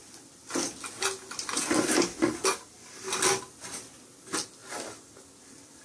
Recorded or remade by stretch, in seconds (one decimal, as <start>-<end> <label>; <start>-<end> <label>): 0.0-5.8 recorded